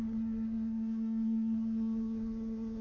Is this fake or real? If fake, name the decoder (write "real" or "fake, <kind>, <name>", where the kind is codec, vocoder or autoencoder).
fake, codec, SNAC